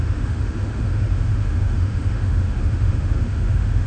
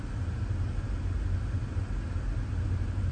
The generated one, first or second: first